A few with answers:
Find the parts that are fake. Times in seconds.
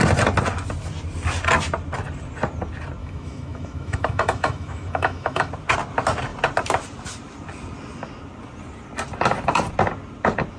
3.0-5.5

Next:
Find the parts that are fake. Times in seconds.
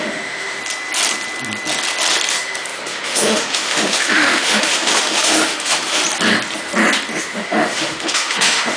0.0-0.6; 2.3-6.0; 7.2-8.8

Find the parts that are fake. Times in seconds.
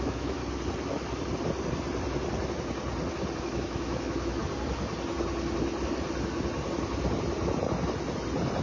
0.0-0.4; 3.4-4.4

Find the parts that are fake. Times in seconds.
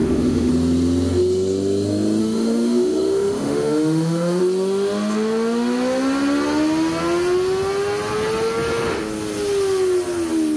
0.0-0.5; 2.2-4.4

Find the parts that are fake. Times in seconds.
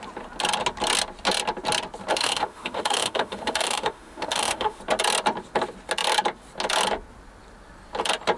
2.1-4.8